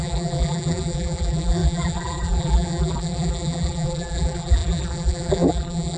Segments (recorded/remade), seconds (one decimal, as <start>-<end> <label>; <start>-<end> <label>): 0.0-6.0 remade